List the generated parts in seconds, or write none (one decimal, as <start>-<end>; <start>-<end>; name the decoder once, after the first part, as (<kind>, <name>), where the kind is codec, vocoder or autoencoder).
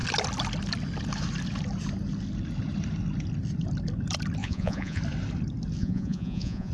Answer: 4.4-5.0 (vocoder, Vocos); 5.8-6.7